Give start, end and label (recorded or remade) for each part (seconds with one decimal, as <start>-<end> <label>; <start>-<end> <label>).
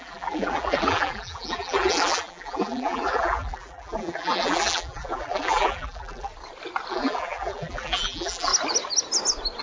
0.0-6.3 remade; 6.3-6.9 recorded; 6.9-8.5 remade; 8.5-9.6 recorded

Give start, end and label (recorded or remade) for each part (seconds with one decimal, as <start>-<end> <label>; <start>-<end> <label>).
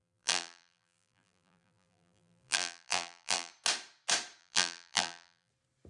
0.0-3.5 remade; 3.5-4.4 recorded; 4.4-5.5 remade; 5.5-5.9 recorded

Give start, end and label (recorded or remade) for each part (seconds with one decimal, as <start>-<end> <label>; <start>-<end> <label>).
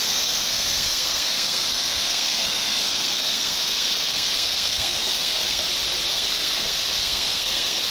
0.0-5.6 remade; 5.6-6.1 recorded; 6.1-7.9 remade